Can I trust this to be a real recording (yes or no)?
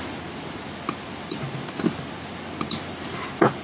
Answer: yes